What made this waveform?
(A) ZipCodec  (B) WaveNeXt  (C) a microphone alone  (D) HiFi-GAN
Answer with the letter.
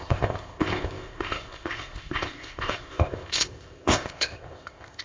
A